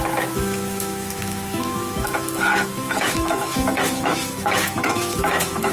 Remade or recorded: remade